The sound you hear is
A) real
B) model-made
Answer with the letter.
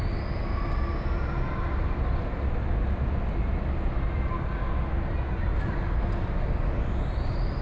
A